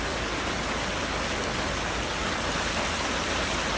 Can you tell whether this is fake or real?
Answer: real